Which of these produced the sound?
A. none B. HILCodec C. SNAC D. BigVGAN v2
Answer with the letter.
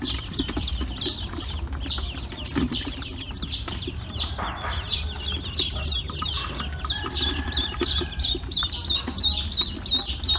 D